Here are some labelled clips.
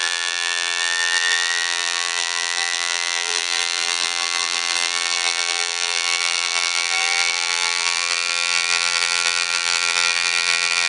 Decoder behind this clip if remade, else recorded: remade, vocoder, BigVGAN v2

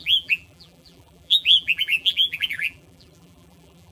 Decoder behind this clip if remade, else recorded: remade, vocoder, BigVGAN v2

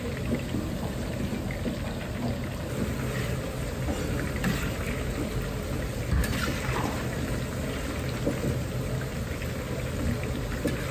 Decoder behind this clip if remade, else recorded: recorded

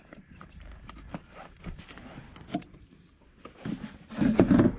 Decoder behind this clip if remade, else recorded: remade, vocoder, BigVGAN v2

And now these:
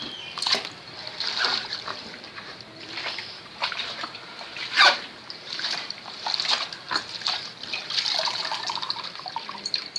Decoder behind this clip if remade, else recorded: remade, vocoder, BigVGAN v2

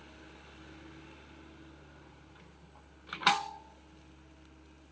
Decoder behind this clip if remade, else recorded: recorded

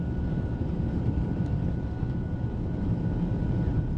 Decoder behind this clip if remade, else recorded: remade, vocoder, BigVGAN v2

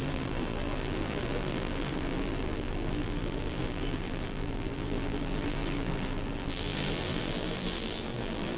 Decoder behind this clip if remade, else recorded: remade, vocoder, BigVGAN v2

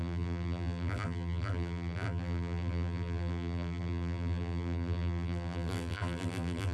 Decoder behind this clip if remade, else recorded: remade, vocoder, BigVGAN v2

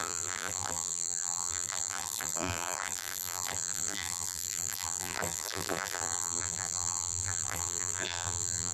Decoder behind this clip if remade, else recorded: remade, vocoder, BigVGAN v2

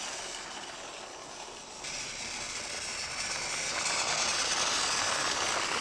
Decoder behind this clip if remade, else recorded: recorded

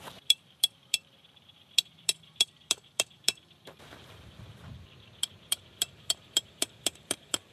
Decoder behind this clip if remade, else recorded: remade, vocoder, BigVGAN v2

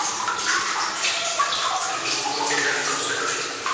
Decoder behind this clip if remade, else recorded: recorded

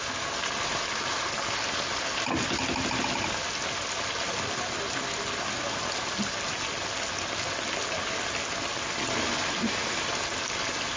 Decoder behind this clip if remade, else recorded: recorded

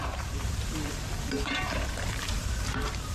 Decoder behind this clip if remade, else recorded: remade, vocoder, BigVGAN v2